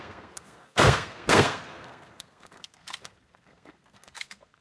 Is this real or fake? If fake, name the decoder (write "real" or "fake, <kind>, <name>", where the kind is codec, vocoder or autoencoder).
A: fake, codec, SNAC